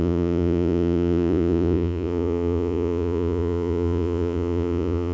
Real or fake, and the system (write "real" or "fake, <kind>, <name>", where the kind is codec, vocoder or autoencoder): fake, vocoder, Vocos